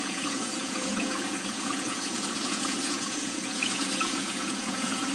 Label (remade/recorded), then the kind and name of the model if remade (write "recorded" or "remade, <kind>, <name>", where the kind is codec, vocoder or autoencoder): remade, vocoder, Vocos